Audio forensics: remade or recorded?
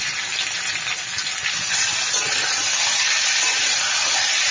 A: recorded